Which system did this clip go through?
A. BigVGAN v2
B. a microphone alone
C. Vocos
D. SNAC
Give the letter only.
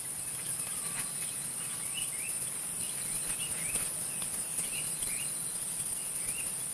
B